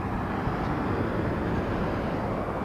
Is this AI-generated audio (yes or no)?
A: no